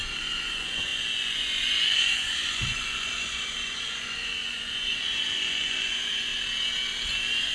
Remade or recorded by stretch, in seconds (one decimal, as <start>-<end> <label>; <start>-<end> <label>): 0.0-6.3 remade; 6.3-7.1 recorded; 7.1-7.5 remade